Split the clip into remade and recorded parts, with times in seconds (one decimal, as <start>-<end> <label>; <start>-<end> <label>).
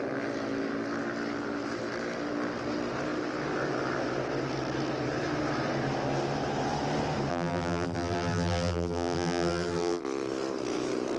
0.0-7.3 recorded; 7.3-10.0 remade; 10.0-11.2 recorded